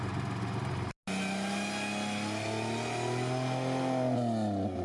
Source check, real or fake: real